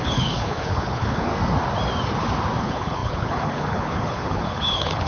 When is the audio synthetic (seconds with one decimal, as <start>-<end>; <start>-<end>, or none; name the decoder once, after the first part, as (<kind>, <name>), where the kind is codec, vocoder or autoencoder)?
0.0-1.3 (codec, HILCodec); 2.6-5.1